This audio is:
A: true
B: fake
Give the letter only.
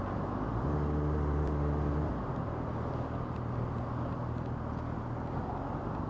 A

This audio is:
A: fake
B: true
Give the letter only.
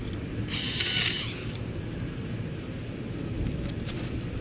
B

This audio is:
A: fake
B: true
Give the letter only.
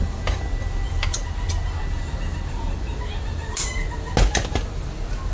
B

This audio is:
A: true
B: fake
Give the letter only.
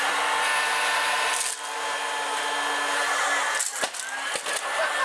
A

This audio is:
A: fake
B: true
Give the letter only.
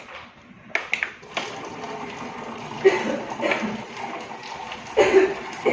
B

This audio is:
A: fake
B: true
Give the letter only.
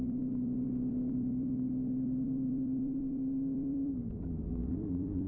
A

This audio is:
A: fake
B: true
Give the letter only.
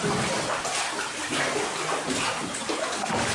B